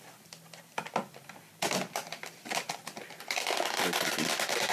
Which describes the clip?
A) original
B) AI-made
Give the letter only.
B